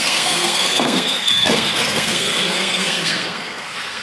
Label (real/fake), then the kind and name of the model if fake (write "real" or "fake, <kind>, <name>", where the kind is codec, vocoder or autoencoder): fake, codec, SNAC